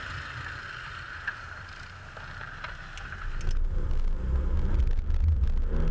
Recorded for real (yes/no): yes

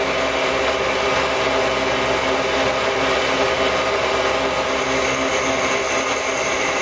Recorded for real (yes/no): yes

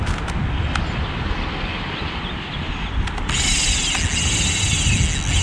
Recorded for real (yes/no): yes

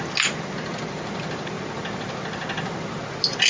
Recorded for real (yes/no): yes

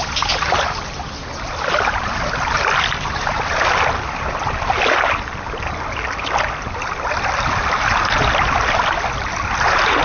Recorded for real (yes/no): yes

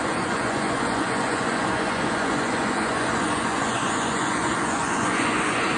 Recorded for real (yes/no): no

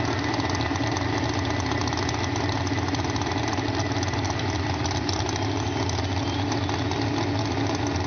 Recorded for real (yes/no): yes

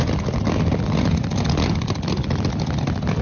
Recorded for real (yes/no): yes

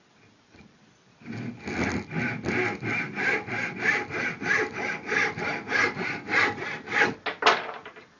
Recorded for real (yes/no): yes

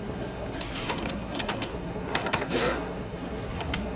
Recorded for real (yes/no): no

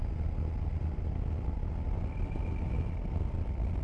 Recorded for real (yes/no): yes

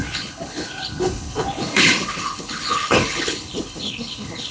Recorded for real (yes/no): no